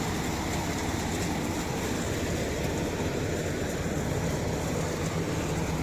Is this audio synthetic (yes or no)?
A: no